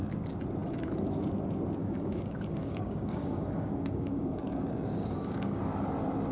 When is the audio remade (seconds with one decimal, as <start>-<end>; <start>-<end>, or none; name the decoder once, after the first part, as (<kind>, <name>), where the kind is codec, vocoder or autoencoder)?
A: 1.8-5.6 (codec, DAC)